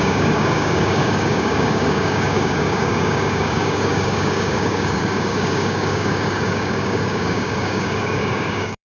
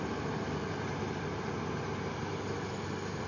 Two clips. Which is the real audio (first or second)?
second